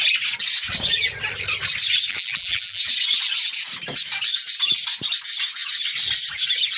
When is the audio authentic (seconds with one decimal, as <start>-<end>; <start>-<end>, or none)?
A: 0.0-2.1; 2.8-6.8